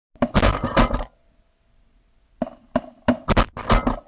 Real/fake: real